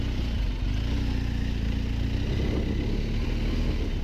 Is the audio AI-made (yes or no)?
no